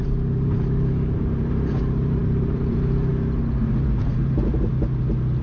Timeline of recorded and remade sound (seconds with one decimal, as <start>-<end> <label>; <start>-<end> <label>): 0.0-3.1 remade; 3.1-4.0 recorded; 4.0-4.7 remade; 4.7-5.4 recorded